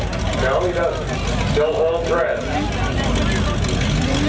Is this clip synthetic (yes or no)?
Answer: no